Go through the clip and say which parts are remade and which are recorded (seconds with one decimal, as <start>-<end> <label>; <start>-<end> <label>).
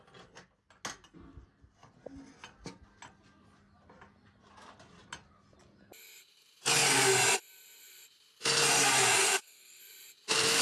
0.0-9.2 recorded; 9.2-9.8 remade; 9.8-10.6 recorded